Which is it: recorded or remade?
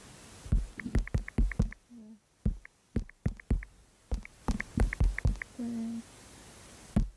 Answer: recorded